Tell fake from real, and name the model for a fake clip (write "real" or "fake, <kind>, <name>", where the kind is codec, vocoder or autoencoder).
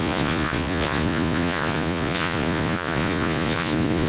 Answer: fake, vocoder, Vocos